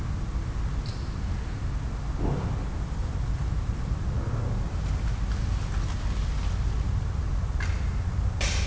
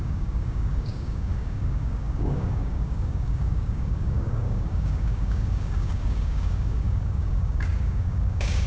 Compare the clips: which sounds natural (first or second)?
first